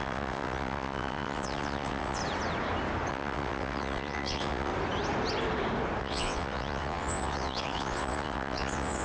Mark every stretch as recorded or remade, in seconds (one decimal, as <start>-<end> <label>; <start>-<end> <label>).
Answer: 0.0-2.2 remade; 2.2-3.1 recorded; 3.1-4.7 remade; 4.7-6.0 recorded; 6.0-9.0 remade